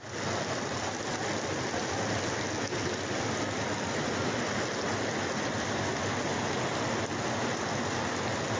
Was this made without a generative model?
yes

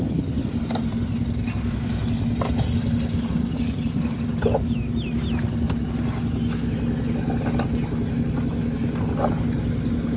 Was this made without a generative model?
yes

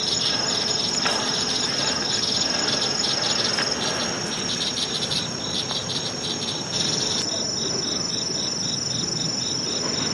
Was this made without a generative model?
yes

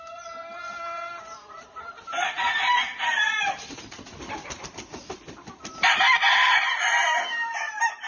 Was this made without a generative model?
no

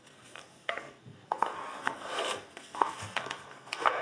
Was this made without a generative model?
no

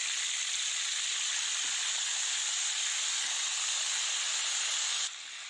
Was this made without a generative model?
yes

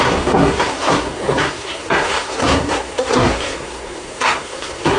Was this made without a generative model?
no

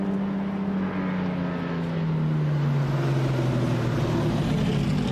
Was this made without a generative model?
yes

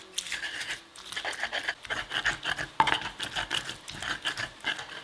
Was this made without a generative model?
yes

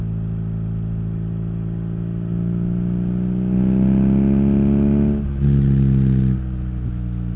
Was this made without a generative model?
yes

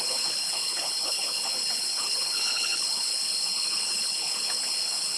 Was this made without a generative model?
no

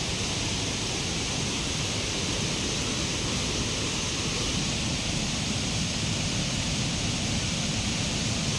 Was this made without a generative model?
yes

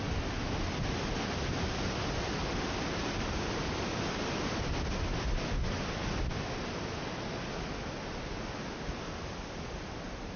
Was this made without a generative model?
yes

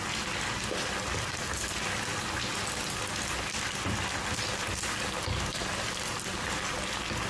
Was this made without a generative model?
yes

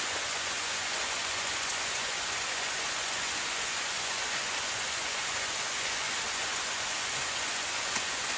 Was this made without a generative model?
no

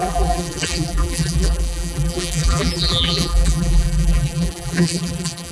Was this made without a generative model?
no